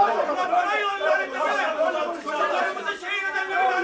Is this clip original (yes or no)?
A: no